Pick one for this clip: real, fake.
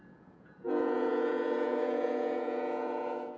fake